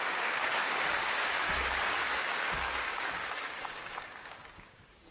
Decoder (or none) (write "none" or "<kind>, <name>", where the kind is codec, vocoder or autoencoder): codec, DAC